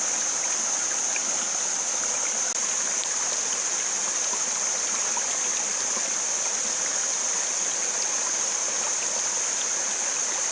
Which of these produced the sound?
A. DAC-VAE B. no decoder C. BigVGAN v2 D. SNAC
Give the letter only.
B